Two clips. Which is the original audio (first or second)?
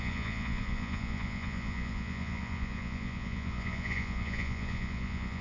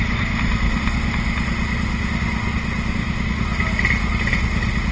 second